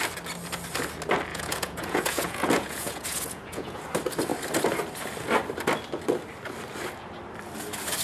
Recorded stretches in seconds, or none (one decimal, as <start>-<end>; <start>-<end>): 0.0-1.3; 3.8-8.0